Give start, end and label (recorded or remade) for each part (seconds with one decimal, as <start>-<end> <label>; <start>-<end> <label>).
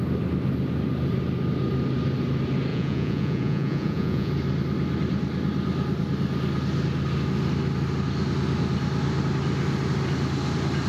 0.0-2.7 recorded; 2.7-4.3 remade; 4.3-10.9 recorded